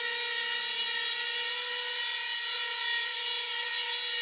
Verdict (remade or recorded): recorded